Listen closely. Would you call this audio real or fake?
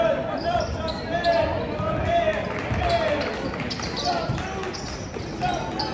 real